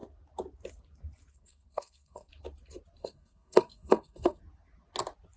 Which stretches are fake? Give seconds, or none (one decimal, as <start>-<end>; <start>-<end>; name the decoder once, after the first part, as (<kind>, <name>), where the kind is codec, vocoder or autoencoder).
1.3-2.3 (codec, SNAC); 3.0-4.4

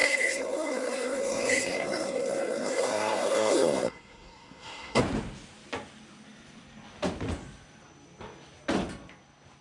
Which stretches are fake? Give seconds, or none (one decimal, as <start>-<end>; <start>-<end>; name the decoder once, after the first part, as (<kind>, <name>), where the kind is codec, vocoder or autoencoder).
0.0-5.0 (codec, SNAC)

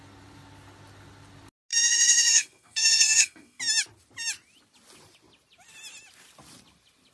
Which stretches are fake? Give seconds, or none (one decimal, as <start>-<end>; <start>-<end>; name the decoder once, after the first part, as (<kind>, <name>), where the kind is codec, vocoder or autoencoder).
1.7-3.6 (codec, SNAC)

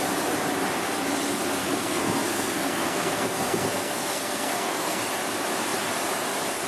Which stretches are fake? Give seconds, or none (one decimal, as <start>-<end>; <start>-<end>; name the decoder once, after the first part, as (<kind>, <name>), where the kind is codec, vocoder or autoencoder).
1.6-5.0 (codec, SNAC)

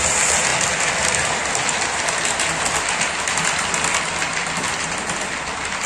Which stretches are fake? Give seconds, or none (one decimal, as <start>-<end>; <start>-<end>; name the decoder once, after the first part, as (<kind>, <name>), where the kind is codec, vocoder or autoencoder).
none

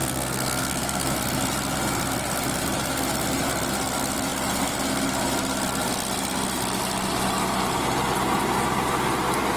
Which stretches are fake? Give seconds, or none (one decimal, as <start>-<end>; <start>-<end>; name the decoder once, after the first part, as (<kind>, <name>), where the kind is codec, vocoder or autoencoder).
0.0-1.1 (codec, SNAC)

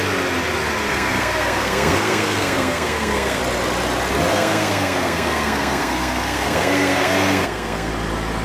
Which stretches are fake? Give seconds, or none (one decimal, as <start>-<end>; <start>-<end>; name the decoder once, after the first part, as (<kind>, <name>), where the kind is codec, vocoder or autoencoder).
0.9-3.4 (codec, SNAC); 4.3-7.9